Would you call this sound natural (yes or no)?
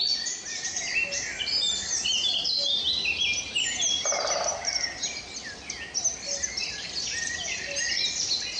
yes